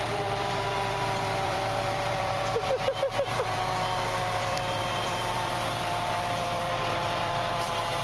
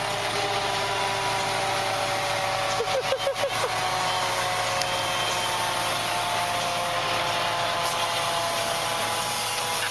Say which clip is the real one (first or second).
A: second